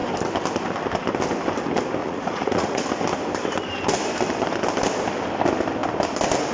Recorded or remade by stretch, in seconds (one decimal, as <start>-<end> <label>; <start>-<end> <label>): 0.0-2.0 recorded; 2.0-2.8 remade; 2.8-6.5 recorded